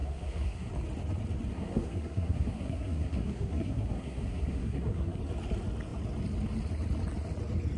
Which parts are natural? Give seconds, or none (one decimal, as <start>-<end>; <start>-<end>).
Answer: 0.7-1.5; 5.2-7.8